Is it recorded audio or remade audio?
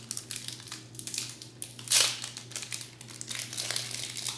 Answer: recorded